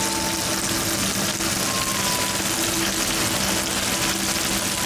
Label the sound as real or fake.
real